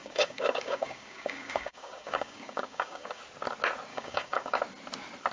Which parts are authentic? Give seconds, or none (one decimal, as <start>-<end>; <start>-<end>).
3.2-3.9; 4.6-5.3